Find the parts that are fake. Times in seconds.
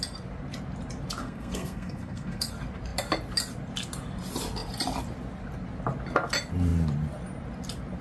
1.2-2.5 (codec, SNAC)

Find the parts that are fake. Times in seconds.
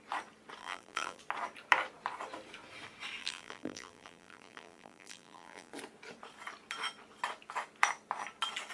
0.6-1.2 (vocoder, BigVGAN v2); 3.2-5.7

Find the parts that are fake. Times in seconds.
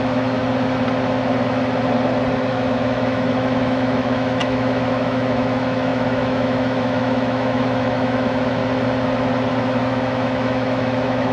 0.0-0.4 (autoencoder, DAC-VAE); 2.5-8.6; 9.6-11.3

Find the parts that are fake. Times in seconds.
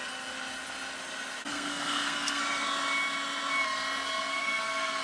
1.5-2.4 (codec, SNAC); 4.3-5.0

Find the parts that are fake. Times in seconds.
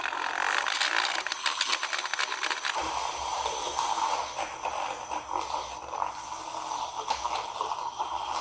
none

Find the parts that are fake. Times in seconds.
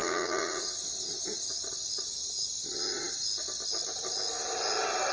0.0-0.7 (vocoder, Vocos)